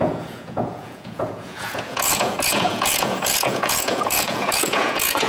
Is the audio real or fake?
fake